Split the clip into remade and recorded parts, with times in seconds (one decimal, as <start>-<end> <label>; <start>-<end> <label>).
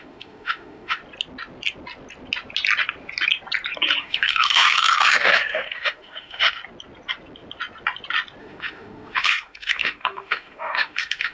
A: 0.0-1.0 remade; 1.0-4.0 recorded; 4.0-6.6 remade; 6.6-8.4 recorded; 8.4-11.3 remade